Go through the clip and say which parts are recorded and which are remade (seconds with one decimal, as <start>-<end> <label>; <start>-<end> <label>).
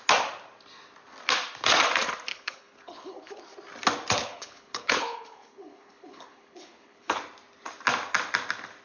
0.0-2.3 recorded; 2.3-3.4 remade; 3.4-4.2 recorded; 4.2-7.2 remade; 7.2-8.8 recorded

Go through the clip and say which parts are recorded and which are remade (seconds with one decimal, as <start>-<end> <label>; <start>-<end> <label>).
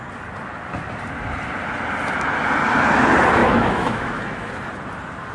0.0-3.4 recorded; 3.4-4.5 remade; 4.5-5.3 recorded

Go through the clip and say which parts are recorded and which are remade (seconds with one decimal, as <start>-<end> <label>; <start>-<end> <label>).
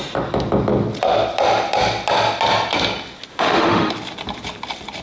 0.0-3.3 recorded; 3.3-3.9 remade; 3.9-5.0 recorded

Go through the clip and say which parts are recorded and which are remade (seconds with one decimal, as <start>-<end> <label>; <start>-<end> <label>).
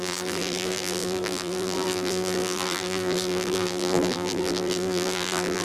0.0-5.6 remade